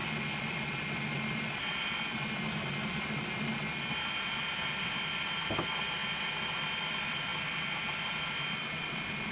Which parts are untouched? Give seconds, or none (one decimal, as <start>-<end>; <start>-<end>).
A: 0.0-3.9; 6.0-6.7; 7.3-8.7